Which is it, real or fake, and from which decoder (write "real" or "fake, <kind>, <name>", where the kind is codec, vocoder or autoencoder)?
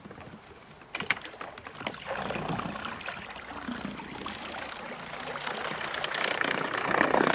real